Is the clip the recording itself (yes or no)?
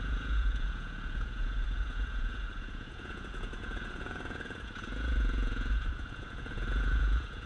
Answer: no